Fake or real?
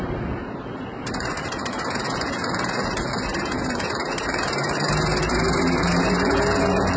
fake